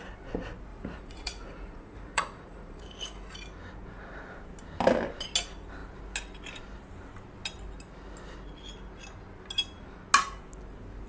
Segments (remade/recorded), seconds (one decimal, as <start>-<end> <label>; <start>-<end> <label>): 0.0-0.7 recorded; 0.7-2.8 remade; 2.8-11.1 recorded